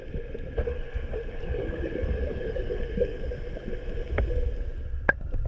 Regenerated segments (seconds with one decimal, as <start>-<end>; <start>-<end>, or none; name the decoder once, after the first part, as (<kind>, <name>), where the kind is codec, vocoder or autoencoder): 0.7-3.3 (codec, DAC)